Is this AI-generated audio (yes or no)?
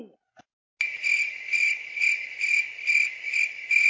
no